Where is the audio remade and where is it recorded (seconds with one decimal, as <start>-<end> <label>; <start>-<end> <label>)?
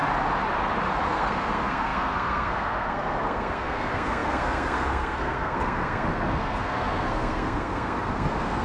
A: 0.0-1.1 recorded; 1.1-8.6 remade